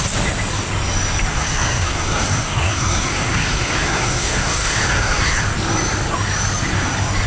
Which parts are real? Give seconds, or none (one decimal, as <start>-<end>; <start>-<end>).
0.0-1.3; 5.4-7.3